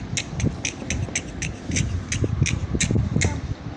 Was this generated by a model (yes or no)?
no